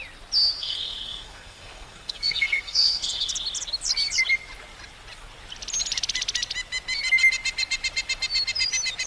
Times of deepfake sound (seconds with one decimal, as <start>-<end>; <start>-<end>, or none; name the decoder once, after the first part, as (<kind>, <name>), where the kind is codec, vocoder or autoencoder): 0.6-3.3 (codec, SNAC)